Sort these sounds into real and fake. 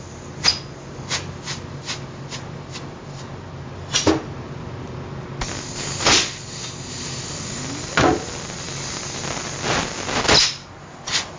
real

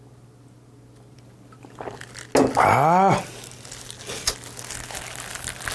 real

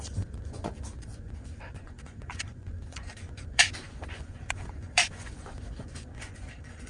fake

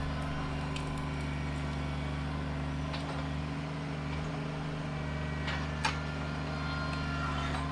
real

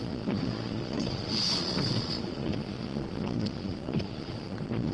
fake